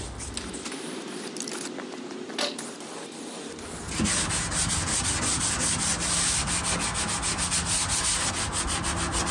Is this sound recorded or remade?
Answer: recorded